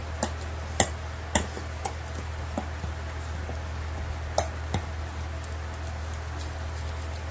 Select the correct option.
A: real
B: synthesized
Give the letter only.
A